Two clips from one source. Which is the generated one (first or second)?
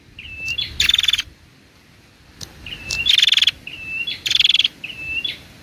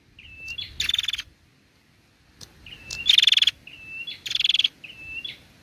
first